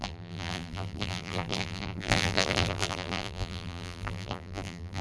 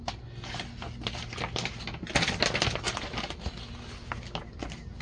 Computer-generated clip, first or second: first